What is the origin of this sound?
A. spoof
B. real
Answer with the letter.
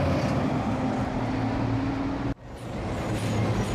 B